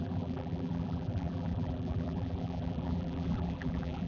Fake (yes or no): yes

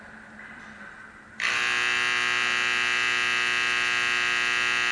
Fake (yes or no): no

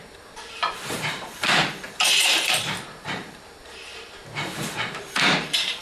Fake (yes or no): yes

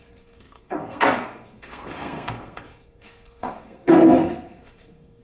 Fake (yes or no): yes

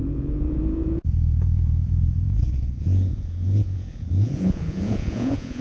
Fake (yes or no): yes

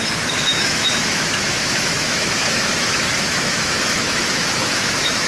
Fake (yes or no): yes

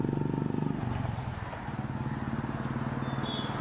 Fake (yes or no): no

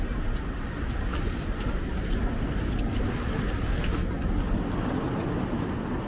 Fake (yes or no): no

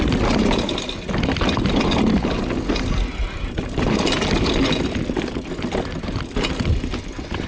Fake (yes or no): no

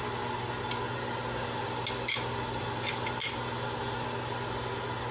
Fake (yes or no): no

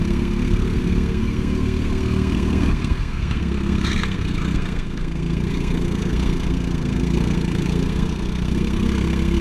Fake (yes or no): yes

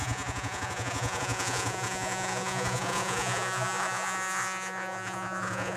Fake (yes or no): yes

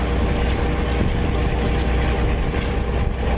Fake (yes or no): no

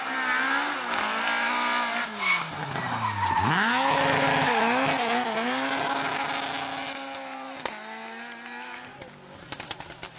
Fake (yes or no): no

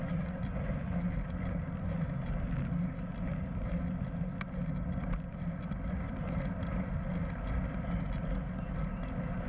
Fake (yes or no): no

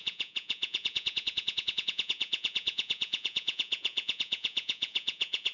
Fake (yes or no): yes